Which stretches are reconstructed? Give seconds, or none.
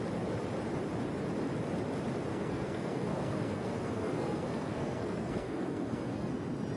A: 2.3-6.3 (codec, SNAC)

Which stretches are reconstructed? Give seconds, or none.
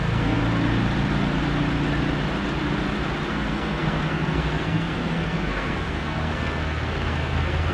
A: 0.0-0.4 (codec, SNAC); 3.3-7.7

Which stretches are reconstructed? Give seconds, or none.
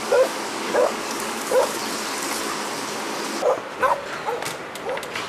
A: 0.0-1.8 (codec, DAC)